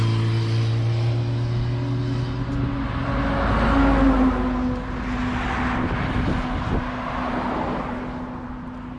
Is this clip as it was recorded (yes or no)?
yes